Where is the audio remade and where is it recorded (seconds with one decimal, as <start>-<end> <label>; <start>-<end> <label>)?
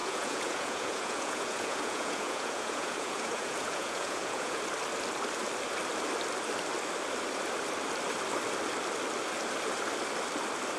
0.0-4.6 remade; 4.6-10.8 recorded